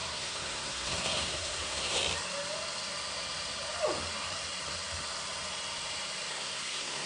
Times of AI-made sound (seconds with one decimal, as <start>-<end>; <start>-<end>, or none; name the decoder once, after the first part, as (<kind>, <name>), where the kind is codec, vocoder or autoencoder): 0.0-2.0 (codec, SNAC); 6.3-7.1